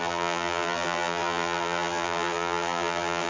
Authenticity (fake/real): fake